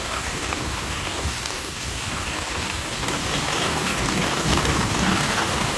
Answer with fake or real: fake